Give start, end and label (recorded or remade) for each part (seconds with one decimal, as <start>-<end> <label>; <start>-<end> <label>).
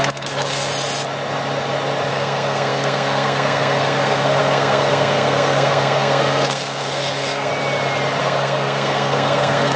0.0-0.7 remade; 0.7-2.1 recorded; 2.1-7.5 remade; 7.5-8.2 recorded; 8.2-9.8 remade